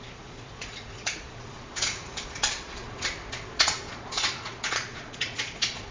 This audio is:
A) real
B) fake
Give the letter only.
B